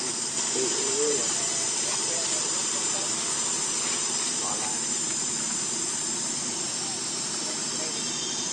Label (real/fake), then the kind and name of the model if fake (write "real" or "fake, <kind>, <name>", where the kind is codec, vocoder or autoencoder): fake, vocoder, BigVGAN v2